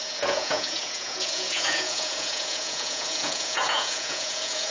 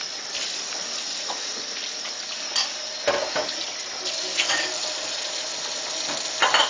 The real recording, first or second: second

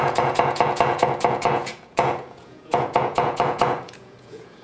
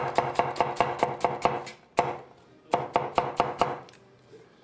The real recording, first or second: second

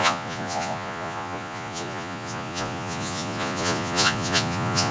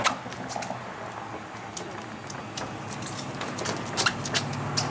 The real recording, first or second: second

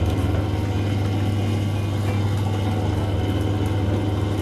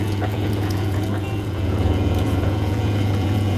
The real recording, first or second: first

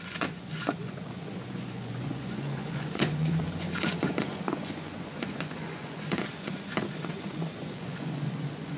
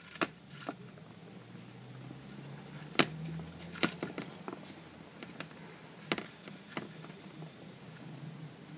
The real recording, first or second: second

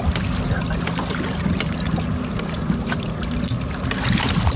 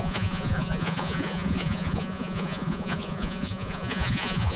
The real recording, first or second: first